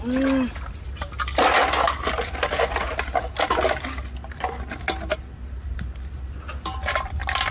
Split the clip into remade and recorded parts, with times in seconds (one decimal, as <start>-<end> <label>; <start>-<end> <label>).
0.0-7.5 recorded